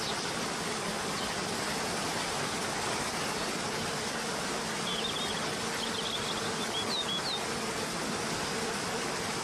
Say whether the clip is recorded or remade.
recorded